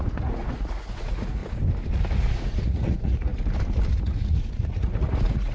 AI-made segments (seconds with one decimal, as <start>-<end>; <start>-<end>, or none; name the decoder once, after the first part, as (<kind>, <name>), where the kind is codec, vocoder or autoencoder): 0.0-1.4 (vocoder, Vocos); 2.2-3.3; 3.9-5.5

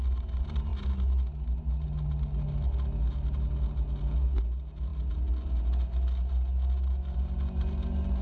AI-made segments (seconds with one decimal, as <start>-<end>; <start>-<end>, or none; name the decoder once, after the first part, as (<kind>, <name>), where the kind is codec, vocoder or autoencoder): none

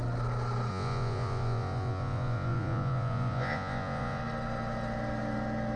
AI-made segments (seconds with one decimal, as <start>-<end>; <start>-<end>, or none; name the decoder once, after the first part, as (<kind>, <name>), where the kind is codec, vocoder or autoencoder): 0.7-4.2 (vocoder, Vocos)

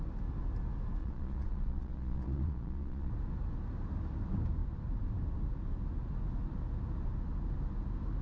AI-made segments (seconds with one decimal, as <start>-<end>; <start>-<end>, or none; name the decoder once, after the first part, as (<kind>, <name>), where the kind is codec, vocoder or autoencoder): 1.0-3.1 (vocoder, Vocos)